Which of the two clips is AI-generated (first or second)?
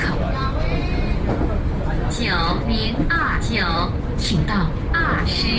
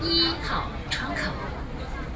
first